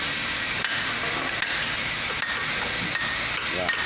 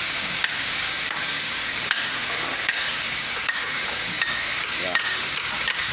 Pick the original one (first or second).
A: first